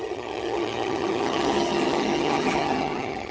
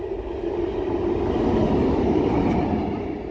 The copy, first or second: first